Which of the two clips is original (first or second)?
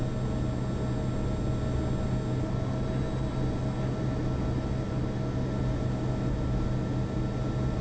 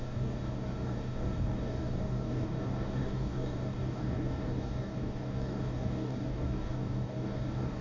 first